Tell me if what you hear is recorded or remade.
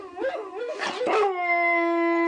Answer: recorded